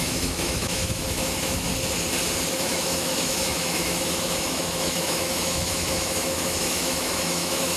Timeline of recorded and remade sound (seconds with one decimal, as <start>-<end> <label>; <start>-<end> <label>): 0.0-1.7 remade; 1.7-2.5 recorded; 2.5-7.8 remade